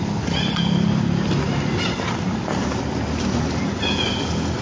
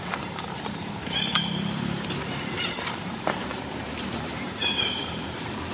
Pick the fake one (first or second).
second